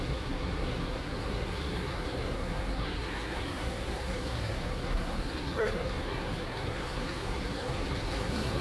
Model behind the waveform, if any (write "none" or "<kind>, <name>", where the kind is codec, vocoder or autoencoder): codec, SNAC